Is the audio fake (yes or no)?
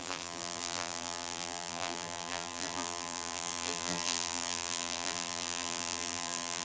yes